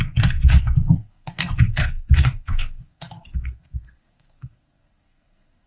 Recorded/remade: remade